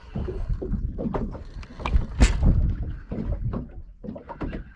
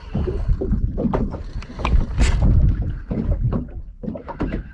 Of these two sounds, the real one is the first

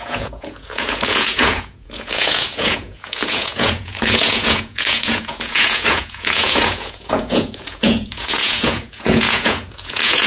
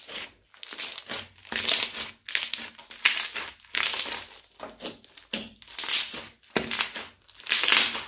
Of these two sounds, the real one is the second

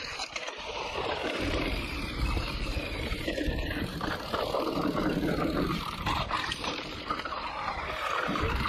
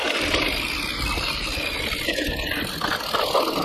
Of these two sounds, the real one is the second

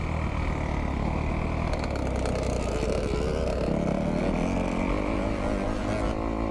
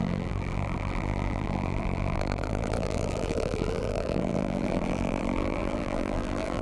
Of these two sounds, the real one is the first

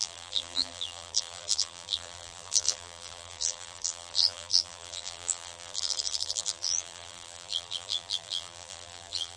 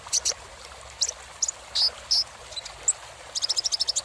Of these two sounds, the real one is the second